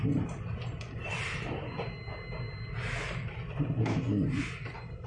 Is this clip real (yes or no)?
yes